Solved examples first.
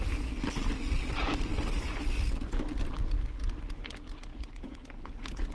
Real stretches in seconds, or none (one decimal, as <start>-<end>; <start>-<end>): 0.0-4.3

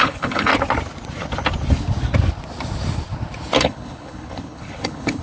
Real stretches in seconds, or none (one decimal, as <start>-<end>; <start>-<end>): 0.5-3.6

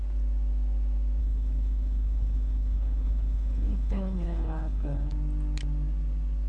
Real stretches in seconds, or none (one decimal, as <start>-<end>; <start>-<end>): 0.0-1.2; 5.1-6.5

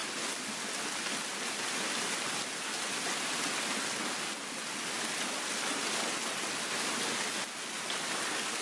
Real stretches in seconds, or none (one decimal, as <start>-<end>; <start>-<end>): 0.0-8.6

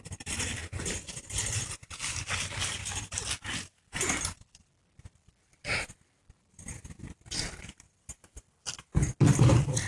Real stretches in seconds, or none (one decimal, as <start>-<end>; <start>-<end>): 0.0-9.9

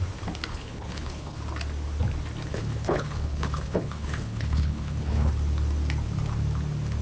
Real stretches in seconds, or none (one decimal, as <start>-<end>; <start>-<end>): 0.0-0.5; 1.4-2.5; 5.3-7.0

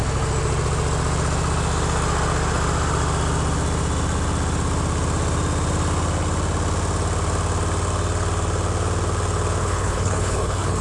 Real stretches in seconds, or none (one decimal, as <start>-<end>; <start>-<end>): 0.0-9.6